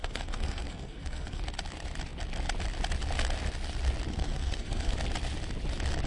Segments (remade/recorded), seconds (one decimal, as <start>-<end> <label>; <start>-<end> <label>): 0.0-1.4 remade; 1.4-4.1 recorded; 4.1-4.9 remade; 4.9-6.1 recorded